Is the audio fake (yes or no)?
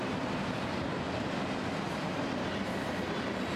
no